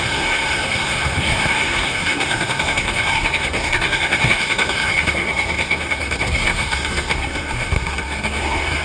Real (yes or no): no